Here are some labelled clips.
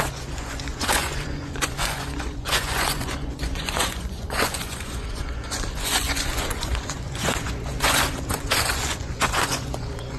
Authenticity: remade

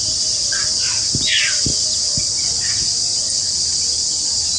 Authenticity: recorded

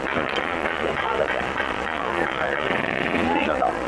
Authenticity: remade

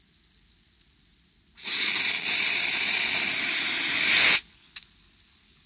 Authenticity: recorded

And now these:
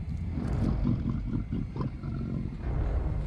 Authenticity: recorded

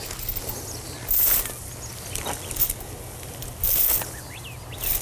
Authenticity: recorded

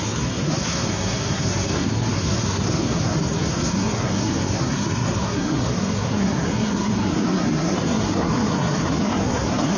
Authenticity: remade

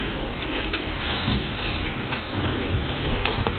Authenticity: remade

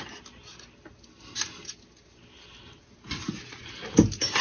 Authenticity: recorded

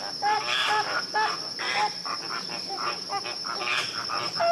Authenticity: remade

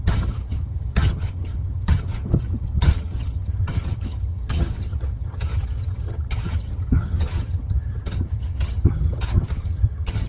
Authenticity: remade